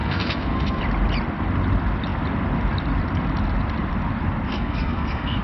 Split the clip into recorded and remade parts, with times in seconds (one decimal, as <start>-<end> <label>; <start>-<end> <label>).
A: 0.0-0.8 remade; 0.8-4.5 recorded; 4.5-5.4 remade

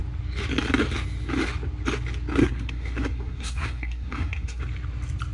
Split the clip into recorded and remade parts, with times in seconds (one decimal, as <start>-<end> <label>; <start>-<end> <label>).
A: 0.0-2.4 recorded; 2.4-4.6 remade; 4.6-5.3 recorded

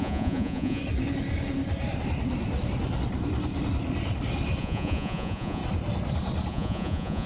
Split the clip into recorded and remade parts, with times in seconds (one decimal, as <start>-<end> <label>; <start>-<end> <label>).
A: 0.0-0.8 remade; 0.8-4.6 recorded; 4.6-5.6 remade; 5.6-6.5 recorded; 6.5-7.3 remade

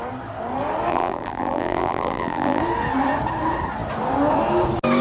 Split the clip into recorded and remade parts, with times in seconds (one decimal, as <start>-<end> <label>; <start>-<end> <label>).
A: 0.0-0.9 recorded; 0.9-2.6 remade; 2.6-5.0 recorded

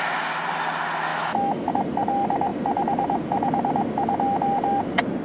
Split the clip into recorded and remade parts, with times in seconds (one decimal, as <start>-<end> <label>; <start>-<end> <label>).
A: 0.0-1.1 recorded; 1.1-1.7 remade; 1.7-5.2 recorded

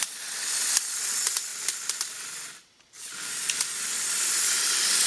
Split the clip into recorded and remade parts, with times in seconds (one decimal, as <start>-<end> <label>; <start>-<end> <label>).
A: 0.0-5.1 recorded